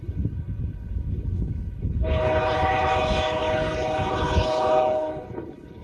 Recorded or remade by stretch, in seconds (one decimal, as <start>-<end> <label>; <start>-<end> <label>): 0.0-5.8 remade